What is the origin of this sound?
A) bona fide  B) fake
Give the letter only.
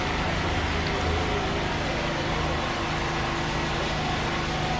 A